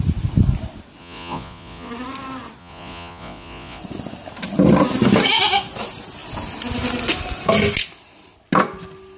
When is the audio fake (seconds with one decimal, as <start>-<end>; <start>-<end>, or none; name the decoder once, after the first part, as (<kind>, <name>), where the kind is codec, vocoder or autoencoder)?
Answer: 1.0-1.9 (vocoder, Vocos); 2.6-3.8

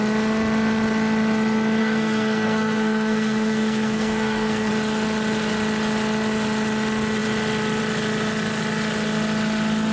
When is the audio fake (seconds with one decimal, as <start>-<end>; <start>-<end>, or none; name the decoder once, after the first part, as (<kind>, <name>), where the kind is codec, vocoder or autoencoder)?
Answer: 1.8-4.7 (codec, SNAC)

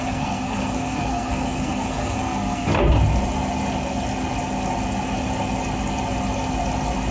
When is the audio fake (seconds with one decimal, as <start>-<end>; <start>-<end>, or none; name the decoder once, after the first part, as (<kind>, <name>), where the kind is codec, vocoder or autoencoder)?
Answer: 0.0-2.7 (codec, SNAC)

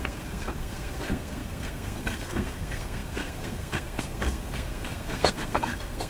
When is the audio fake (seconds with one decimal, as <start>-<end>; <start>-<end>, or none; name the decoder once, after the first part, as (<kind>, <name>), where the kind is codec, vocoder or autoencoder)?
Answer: 0.0-6.1 (codec, SNAC)

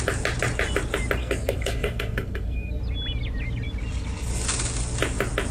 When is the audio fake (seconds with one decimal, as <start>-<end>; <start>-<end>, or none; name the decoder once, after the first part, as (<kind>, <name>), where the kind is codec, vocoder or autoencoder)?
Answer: 1.2-2.8 (codec, SNAC)